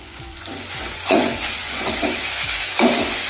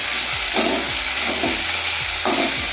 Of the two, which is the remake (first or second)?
first